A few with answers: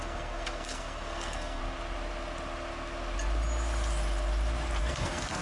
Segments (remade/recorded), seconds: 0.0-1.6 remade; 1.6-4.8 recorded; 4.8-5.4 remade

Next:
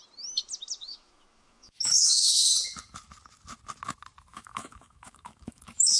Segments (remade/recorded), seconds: 0.0-0.9 recorded; 0.9-2.5 remade; 2.5-4.3 recorded; 4.3-6.0 remade

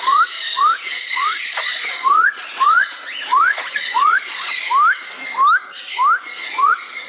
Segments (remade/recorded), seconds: 0.0-4.6 remade; 4.6-6.3 recorded; 6.3-7.1 remade

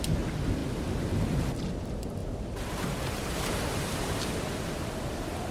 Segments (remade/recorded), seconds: 0.0-5.5 recorded

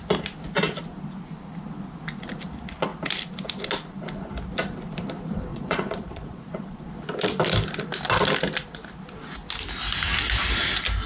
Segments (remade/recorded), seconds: 0.0-5.5 recorded; 5.5-6.9 remade; 6.9-11.1 recorded